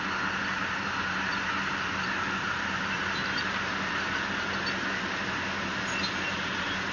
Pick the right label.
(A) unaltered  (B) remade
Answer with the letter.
A